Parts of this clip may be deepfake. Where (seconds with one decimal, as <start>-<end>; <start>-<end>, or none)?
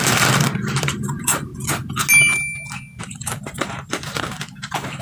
0.0-1.5; 3.0-5.0